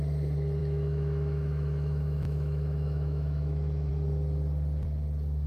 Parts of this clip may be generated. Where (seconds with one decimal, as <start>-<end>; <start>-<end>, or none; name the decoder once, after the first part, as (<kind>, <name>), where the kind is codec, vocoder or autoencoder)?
0.6-3.9 (autoencoder, DAC-VAE)